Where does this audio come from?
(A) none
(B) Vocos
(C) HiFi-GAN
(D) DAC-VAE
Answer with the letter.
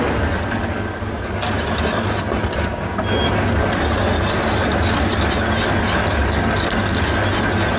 A